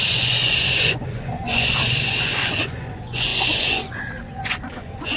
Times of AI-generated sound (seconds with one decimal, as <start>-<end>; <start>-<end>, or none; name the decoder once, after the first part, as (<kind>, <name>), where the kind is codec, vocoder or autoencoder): 0.0-5.2 (vocoder, Vocos)